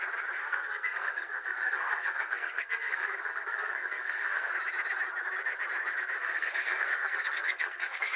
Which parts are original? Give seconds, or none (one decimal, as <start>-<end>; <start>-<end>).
0.0-0.4; 4.5-6.2